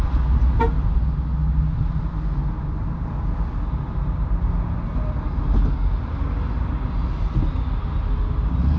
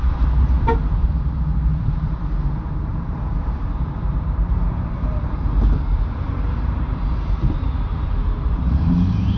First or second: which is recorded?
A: first